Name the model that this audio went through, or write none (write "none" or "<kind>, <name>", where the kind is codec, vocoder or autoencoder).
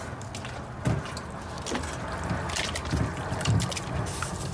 none